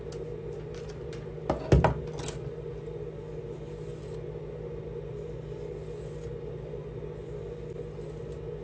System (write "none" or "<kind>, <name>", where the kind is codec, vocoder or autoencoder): none